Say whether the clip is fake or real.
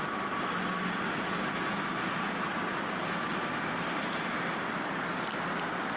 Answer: real